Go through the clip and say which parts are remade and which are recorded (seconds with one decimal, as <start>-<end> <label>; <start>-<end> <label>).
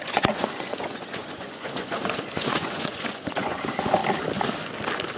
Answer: 0.0-4.0 remade; 4.0-5.2 recorded